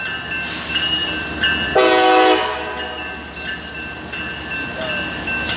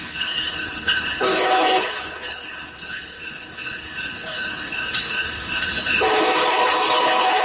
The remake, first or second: second